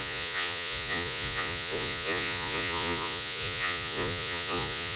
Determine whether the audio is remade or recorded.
remade